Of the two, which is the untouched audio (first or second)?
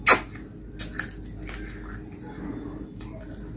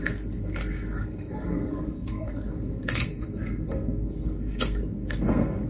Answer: first